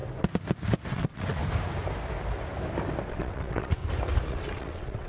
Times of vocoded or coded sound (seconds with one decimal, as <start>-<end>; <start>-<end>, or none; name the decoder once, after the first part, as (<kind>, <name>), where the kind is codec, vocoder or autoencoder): 0.9-1.4 (vocoder, WaveNeXt); 3.1-3.8; 4.3-5.1